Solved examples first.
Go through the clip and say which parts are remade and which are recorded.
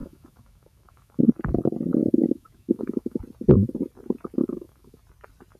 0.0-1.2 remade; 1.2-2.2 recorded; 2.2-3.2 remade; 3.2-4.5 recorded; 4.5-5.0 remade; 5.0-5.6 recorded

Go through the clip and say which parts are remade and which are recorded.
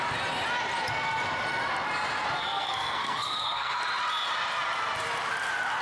0.0-2.4 recorded; 2.4-3.8 remade; 3.8-5.8 recorded